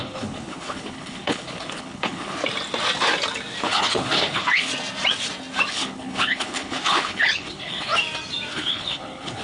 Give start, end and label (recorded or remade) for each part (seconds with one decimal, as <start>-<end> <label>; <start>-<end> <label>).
0.0-2.4 remade; 2.4-3.6 recorded; 3.6-4.7 remade; 4.7-5.7 recorded; 5.7-7.9 remade; 7.9-8.5 recorded; 8.5-9.4 remade